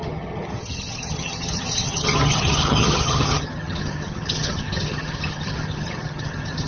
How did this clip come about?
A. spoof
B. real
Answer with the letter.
A